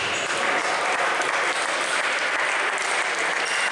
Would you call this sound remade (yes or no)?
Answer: yes